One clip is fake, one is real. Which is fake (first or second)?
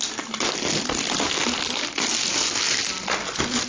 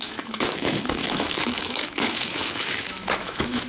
second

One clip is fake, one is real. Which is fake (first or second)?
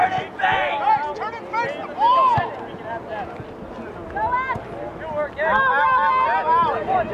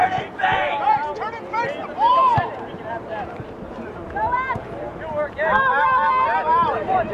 second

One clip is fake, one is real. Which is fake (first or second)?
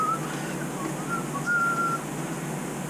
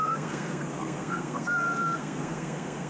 second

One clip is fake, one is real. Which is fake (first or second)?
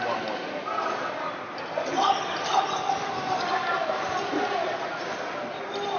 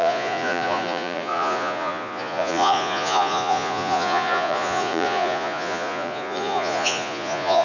second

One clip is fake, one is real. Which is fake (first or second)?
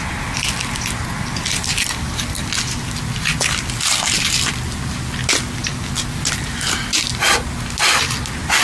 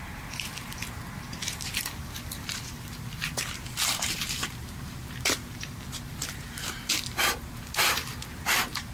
second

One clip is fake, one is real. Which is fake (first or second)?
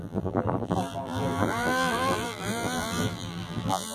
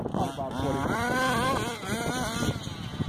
first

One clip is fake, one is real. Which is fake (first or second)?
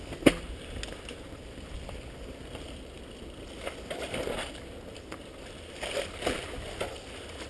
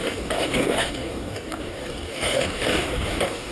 second